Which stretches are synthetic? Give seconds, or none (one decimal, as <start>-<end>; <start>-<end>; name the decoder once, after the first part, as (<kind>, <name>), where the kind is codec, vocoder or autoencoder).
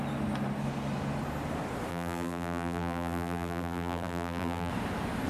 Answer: 1.9-4.7 (vocoder, BigVGAN v2)